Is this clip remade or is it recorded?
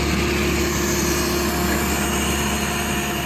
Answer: recorded